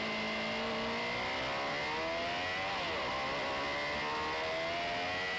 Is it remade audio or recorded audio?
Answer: recorded